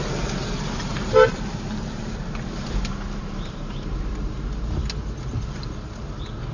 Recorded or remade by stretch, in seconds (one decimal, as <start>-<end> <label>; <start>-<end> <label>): 0.0-0.9 recorded; 0.9-4.1 remade; 4.1-6.5 recorded